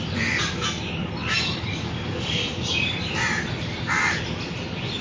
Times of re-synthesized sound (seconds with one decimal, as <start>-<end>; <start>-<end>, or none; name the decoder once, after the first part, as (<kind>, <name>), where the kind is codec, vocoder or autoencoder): 1.2-4.2 (vocoder, BigVGAN v2)